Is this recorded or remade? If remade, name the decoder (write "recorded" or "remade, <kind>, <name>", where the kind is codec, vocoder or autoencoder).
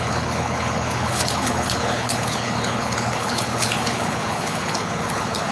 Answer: remade, codec, HILCodec